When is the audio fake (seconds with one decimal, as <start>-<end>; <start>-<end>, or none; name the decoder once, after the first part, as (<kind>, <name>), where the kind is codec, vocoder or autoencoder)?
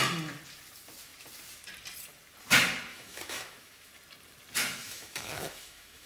2.9-3.9 (autoencoder, DAC-VAE); 4.8-6.1